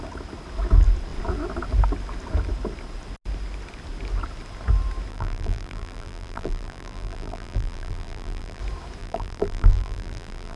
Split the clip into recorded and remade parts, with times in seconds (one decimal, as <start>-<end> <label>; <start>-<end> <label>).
0.0-5.1 recorded; 5.1-8.6 remade; 8.6-9.0 recorded; 9.0-10.6 remade